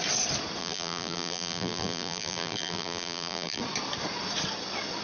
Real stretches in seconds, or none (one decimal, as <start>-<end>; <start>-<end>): 0.0-0.6; 3.6-5.0